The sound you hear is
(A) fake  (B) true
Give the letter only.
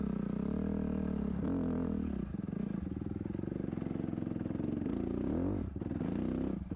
B